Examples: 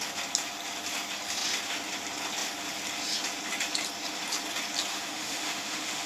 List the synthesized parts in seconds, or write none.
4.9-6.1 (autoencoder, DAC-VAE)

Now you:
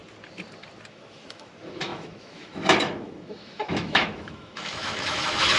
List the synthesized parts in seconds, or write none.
0.9-5.6 (autoencoder, DAC-VAE)

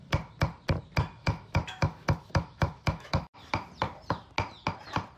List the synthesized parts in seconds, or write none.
1.2-3.5 (autoencoder, DAC-VAE)

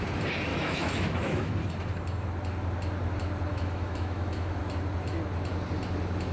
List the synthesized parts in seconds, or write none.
0.5-1.5 (autoencoder, DAC-VAE); 3.5-4.6